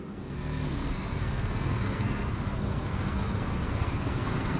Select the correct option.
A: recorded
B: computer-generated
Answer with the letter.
B